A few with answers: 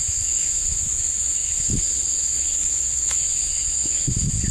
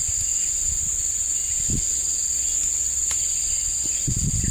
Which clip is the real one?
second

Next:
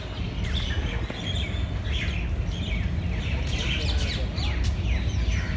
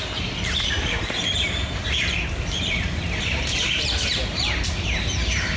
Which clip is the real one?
first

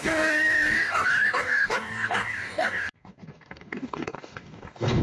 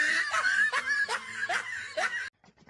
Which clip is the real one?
second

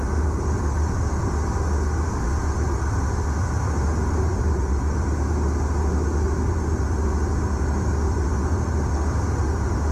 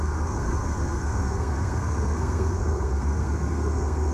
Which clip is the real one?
first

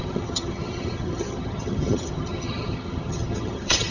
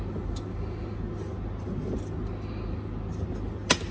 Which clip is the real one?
second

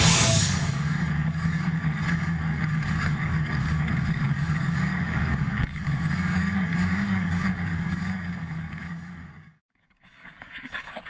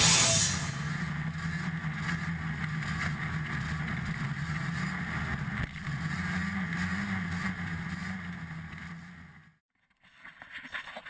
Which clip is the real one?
second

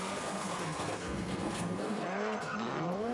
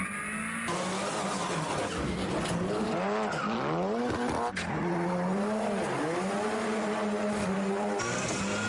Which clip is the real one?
second